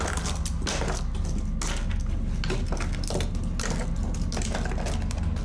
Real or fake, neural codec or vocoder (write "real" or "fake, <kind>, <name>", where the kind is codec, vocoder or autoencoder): real